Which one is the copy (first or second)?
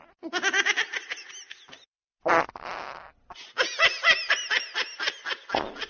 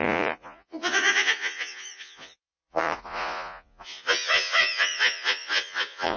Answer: second